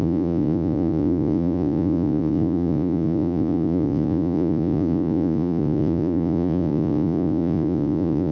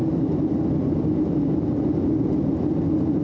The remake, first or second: first